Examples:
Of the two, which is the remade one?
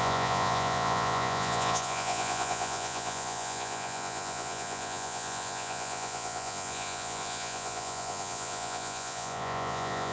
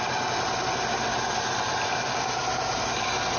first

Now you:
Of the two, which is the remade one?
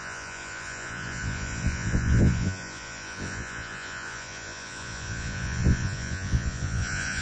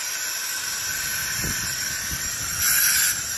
first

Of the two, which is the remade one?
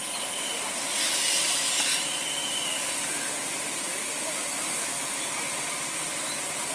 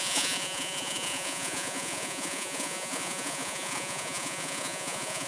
second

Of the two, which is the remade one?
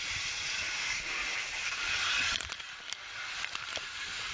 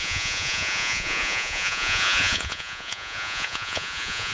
second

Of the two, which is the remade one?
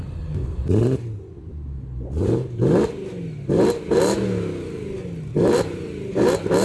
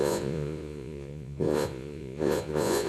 second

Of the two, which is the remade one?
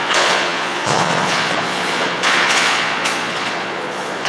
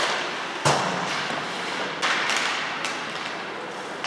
first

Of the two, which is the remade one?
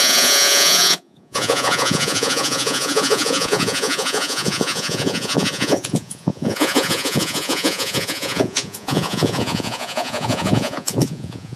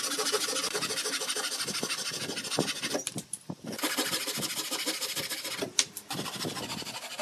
first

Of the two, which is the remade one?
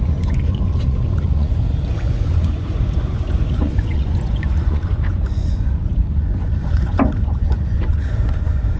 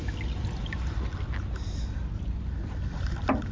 first